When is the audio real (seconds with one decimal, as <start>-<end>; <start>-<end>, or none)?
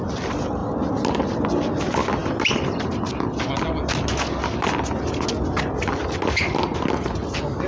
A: 0.0-7.7